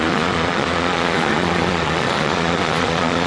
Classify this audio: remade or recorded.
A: remade